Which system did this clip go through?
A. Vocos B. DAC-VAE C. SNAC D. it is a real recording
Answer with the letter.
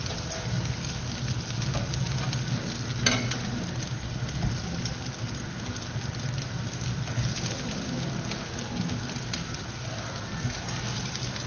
D